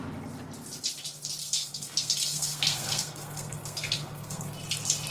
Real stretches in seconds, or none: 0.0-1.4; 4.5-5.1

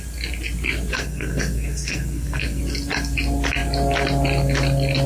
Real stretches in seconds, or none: 0.0-0.9; 2.6-5.1

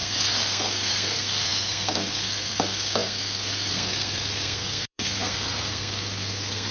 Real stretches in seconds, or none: none